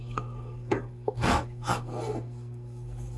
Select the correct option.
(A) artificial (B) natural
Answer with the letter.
A